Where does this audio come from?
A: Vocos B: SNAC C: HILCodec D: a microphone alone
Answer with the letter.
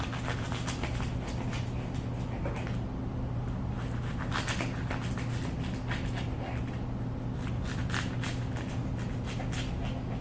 D